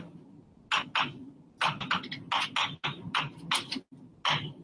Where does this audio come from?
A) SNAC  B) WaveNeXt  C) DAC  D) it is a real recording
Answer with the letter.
D